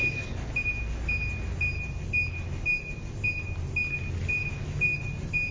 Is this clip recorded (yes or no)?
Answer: yes